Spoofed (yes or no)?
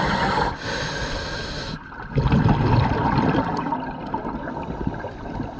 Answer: no